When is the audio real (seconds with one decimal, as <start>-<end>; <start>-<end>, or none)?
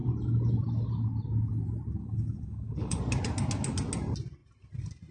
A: 0.0-2.0; 3.0-5.1